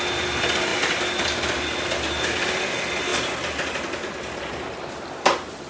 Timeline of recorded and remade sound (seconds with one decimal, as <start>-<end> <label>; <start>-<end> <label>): 0.0-5.7 recorded